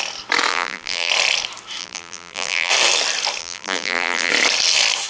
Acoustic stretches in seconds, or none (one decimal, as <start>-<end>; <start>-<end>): 0.0-0.5; 1.1-1.8; 2.7-3.4; 4.3-5.1